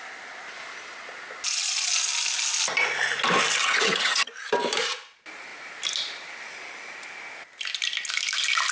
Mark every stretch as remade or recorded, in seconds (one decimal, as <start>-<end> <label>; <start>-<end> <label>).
0.0-3.6 recorded; 3.6-4.3 remade; 4.3-8.7 recorded